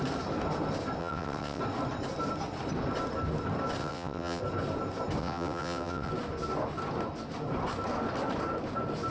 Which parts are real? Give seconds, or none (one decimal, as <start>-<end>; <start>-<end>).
0.0-1.0; 1.6-3.8; 4.4-5.2; 6.1-9.1